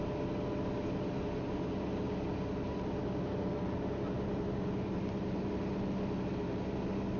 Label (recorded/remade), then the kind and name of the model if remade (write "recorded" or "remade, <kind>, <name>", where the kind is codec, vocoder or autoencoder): recorded